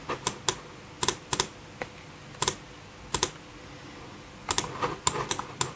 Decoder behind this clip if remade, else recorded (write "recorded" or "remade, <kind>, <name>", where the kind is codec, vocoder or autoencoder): recorded